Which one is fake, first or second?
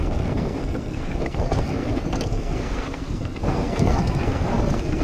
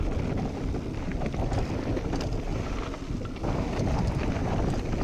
first